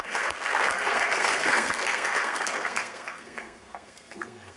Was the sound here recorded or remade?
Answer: remade